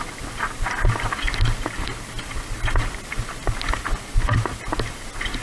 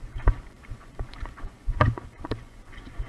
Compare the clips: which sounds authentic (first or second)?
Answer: first